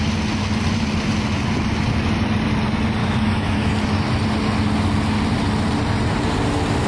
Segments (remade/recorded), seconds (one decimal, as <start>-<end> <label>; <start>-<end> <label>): 0.0-3.0 recorded; 3.0-3.7 remade; 3.7-6.9 recorded